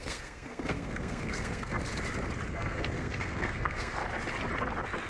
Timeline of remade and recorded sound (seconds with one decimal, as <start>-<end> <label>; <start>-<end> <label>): 0.0-1.8 remade; 1.8-2.5 recorded; 2.5-4.0 remade; 4.0-5.1 recorded